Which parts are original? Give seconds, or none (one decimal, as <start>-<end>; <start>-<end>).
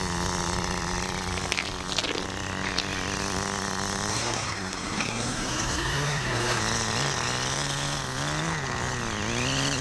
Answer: 0.0-4.1; 6.6-9.8